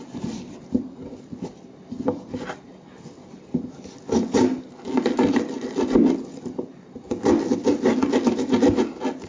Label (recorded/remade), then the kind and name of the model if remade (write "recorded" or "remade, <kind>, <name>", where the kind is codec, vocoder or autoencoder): recorded